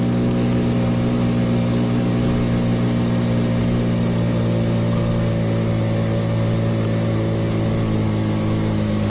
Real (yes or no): yes